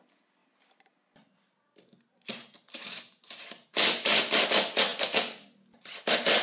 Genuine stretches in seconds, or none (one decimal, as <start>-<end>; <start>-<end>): 0.0-6.4